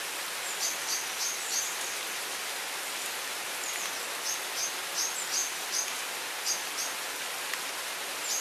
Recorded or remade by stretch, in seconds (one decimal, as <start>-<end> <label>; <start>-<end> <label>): 0.0-8.4 recorded